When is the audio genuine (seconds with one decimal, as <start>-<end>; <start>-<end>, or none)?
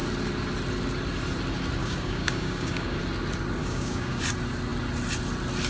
0.0-1.8; 3.0-3.6; 4.2-5.7